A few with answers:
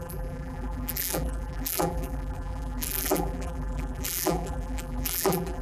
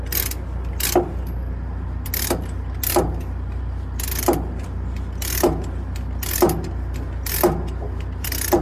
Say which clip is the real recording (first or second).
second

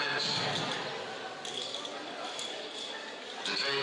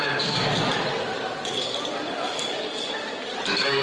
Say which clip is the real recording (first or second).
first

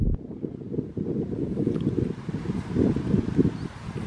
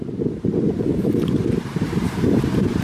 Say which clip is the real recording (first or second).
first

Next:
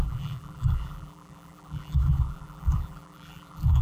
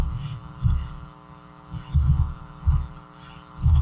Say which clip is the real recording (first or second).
second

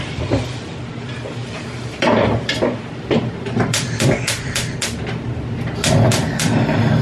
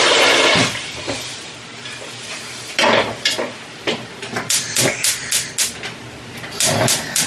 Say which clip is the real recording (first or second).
second